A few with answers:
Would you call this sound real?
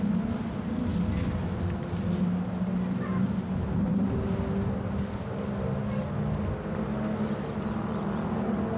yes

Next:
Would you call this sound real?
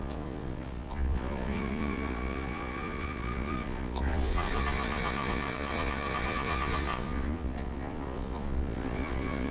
no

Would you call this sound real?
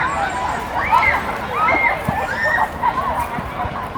yes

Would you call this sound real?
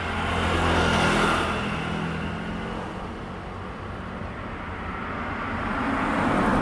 yes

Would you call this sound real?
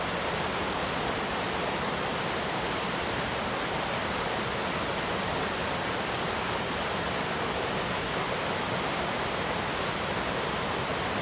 yes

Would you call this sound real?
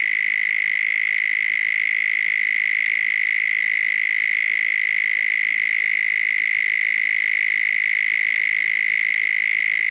yes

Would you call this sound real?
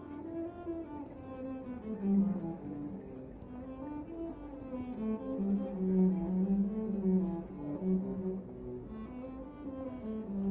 yes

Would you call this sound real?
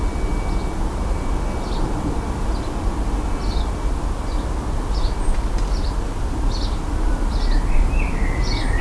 yes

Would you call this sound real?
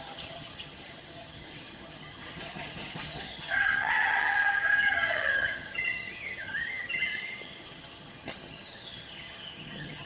no